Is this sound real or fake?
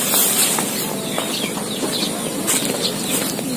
real